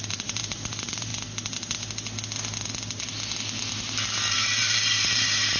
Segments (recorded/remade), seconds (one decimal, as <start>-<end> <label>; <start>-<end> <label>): 0.0-1.1 remade; 1.1-4.3 recorded; 4.3-5.6 remade